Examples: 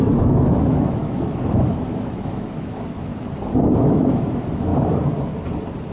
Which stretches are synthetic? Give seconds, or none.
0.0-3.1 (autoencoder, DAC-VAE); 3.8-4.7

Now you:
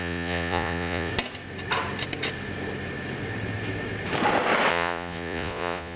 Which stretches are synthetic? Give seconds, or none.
0.0-1.1 (vocoder, Vocos); 4.7-6.0

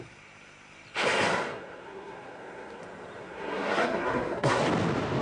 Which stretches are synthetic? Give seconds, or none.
1.5-2.8 (codec, SNAC); 3.2-4.6

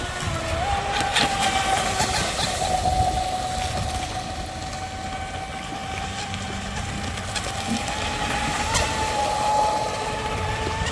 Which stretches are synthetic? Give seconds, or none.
1.1-2.6 (vocoder, BigVGAN v2); 5.8-6.9

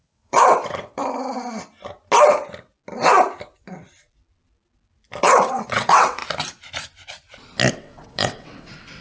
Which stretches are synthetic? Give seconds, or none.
0.0-1.0 (vocoder, WaveNeXt); 5.2-6.2; 7.7-9.0

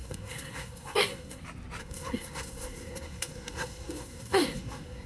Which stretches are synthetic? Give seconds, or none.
0.0-1.4 (codec, SNAC); 1.8-5.1